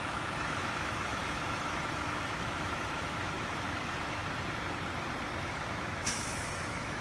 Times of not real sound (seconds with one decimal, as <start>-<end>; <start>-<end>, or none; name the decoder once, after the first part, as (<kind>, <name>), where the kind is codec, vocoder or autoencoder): 0.0-4.2 (autoencoder, DAC-VAE); 5.4-7.0